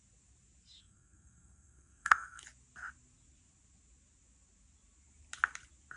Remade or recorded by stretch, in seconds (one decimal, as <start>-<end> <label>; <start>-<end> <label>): 0.0-0.8 recorded; 0.8-2.4 remade; 2.4-6.0 recorded